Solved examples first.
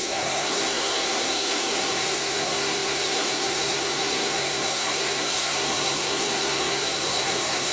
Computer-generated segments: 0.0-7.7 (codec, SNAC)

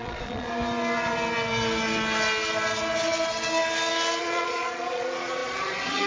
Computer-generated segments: 0.0-0.5 (vocoder, Vocos); 4.2-6.1